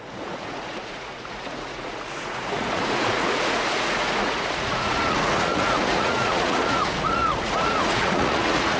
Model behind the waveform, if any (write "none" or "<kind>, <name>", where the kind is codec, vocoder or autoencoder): vocoder, Vocos